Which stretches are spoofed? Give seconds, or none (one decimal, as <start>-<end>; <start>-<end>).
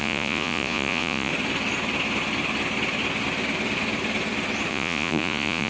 0.0-1.3; 4.7-5.7